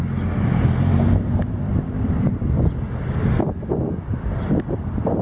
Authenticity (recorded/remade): remade